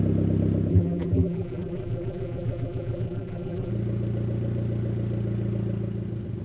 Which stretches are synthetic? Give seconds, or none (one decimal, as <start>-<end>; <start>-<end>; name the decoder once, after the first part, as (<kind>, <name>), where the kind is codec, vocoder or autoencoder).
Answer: 0.7-3.7 (vocoder, BigVGAN v2)